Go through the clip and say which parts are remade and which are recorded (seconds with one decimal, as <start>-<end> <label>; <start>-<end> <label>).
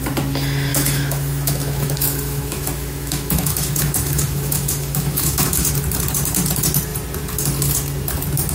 0.0-0.7 recorded; 0.7-5.7 remade; 5.7-8.5 recorded